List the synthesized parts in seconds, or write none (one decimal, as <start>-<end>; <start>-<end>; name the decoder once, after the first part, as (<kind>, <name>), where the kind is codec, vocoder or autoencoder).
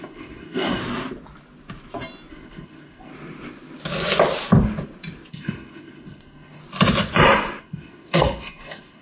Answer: 0.0-0.8 (codec, SNAC); 2.3-3.1; 5.3-6.6; 7.6-9.0